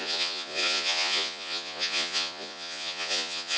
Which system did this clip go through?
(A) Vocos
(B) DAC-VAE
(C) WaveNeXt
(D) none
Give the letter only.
A